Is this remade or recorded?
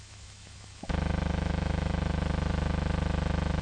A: remade